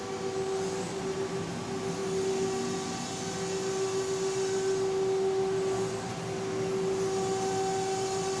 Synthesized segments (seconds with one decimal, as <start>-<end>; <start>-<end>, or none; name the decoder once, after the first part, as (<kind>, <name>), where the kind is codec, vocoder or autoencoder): none